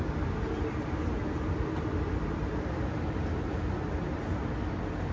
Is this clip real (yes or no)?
yes